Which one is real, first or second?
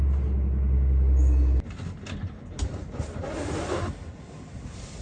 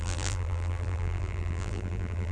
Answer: first